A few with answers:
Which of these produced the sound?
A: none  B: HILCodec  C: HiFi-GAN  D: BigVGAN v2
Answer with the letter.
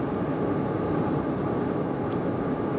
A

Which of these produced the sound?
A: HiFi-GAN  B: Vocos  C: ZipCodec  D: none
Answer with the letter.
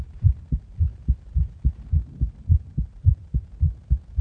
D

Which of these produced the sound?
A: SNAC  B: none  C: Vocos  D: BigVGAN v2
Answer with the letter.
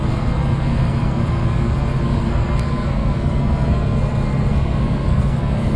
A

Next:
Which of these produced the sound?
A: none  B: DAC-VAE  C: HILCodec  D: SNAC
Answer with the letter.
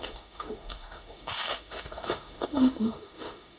B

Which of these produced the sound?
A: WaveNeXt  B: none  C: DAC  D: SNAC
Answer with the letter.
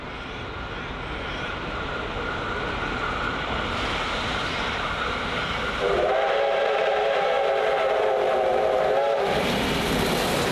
B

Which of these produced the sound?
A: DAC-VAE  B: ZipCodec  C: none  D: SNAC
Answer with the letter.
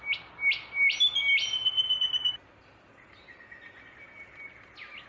C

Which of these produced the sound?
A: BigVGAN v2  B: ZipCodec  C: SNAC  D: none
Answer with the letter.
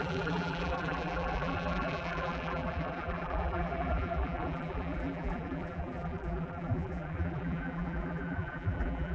A